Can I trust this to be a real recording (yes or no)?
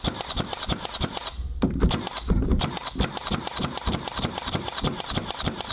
no